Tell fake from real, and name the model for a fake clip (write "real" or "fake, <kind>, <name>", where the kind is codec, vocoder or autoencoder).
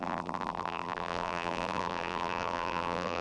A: fake, vocoder, BigVGAN v2